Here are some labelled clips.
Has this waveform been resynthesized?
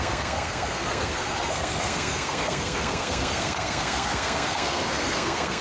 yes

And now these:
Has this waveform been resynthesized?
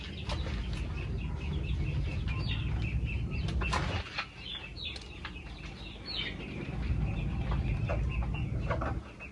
no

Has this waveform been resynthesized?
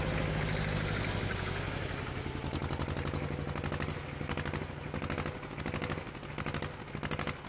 no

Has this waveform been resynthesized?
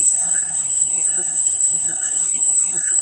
yes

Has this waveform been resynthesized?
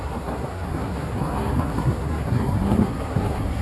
yes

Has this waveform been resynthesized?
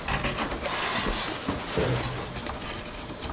no